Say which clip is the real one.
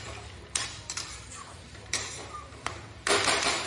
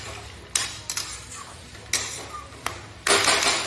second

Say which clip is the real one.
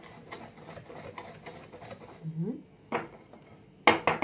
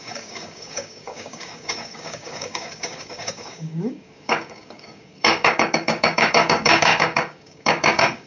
first